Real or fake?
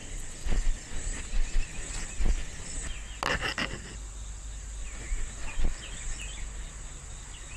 real